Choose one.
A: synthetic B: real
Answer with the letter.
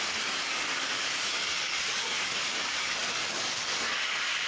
A